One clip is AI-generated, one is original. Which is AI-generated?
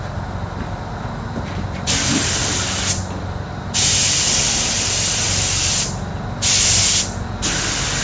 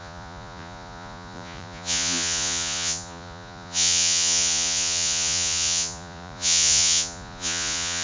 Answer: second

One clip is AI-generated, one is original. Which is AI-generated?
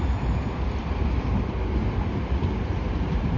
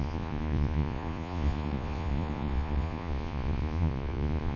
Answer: second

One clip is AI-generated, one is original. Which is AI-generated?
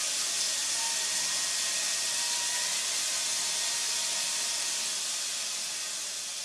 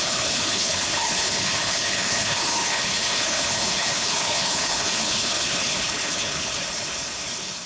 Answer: second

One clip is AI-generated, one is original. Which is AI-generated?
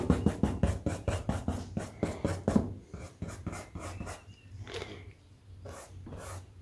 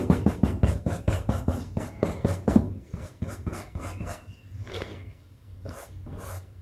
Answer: second